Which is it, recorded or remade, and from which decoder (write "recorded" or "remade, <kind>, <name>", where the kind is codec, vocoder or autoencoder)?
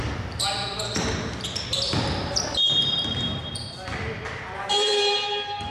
remade, vocoder, BigVGAN v2